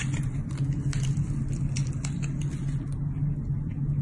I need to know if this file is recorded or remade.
recorded